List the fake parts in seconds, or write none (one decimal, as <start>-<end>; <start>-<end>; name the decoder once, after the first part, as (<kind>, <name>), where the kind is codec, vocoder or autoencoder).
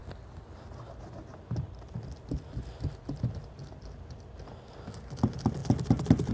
none